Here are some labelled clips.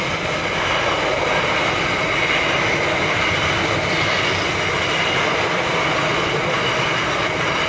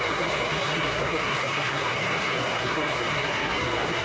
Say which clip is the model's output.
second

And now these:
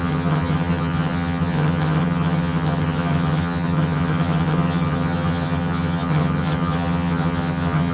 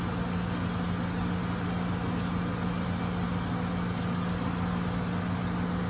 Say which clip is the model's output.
first